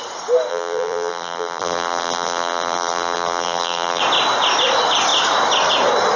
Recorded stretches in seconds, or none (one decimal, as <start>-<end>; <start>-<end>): 0.0-0.5; 4.0-6.2